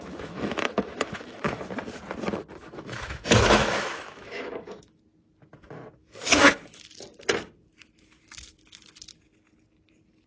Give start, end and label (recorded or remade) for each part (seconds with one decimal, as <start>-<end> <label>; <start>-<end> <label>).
0.0-1.6 remade; 1.6-2.5 recorded; 2.5-5.0 remade; 5.0-6.0 recorded; 6.0-6.8 remade; 6.8-10.3 recorded

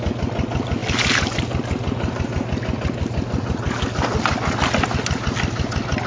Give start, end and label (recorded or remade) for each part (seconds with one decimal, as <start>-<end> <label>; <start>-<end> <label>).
0.0-6.1 recorded

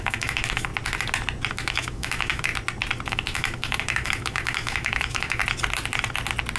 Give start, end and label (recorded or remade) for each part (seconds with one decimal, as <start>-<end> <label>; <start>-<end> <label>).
0.0-0.7 remade; 0.7-1.5 recorded; 1.5-2.5 remade; 2.5-3.1 recorded; 3.1-5.4 remade; 5.4-6.6 recorded

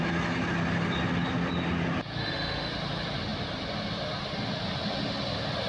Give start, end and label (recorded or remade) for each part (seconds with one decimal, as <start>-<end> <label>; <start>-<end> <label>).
0.0-2.2 recorded; 2.2-2.7 remade; 2.7-5.7 recorded

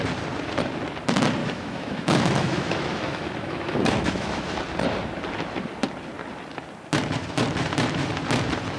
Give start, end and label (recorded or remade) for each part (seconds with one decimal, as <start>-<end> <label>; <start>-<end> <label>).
0.0-1.4 recorded; 1.4-4.6 remade; 4.6-8.8 recorded

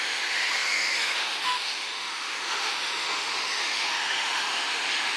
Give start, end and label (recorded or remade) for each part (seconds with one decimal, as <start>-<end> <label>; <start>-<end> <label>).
0.0-5.2 remade

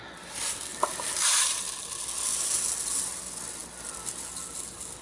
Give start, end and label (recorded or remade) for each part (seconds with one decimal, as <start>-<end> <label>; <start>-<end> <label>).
0.0-5.0 recorded

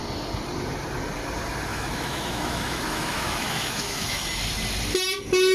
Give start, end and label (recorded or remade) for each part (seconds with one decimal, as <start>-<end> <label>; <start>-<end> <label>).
0.0-1.7 recorded; 1.7-4.4 remade; 4.4-5.5 recorded